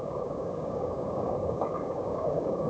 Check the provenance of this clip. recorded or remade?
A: remade